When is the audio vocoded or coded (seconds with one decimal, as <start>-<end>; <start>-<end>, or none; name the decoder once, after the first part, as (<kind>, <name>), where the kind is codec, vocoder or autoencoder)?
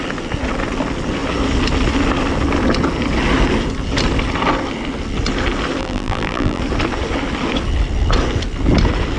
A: 5.8-6.6 (vocoder, BigVGAN v2)